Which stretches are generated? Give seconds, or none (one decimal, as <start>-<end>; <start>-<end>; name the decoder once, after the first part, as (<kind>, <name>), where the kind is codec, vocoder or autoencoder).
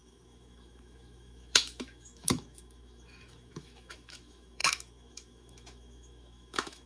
0.0-6.9 (autoencoder, DAC-VAE)